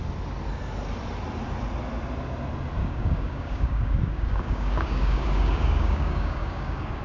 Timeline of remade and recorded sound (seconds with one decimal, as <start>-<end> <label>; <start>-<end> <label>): 0.0-2.8 recorded; 2.8-7.0 remade